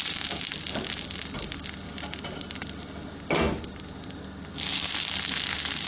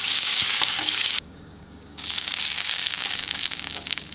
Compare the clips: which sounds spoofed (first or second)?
second